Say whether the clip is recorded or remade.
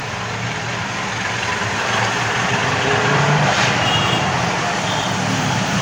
remade